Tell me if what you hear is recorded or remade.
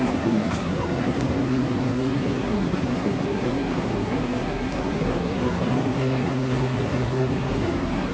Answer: remade